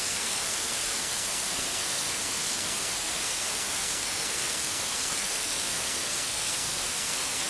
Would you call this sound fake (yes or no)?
yes